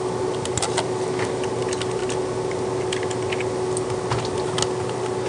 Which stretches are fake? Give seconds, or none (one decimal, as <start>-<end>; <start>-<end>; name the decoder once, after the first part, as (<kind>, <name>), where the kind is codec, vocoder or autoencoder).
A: none